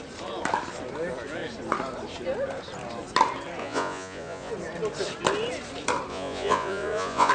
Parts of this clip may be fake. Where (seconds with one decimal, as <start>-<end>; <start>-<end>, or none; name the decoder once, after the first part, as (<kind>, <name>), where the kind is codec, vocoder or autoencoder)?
3.6-4.5 (vocoder, Vocos); 6.1-7.3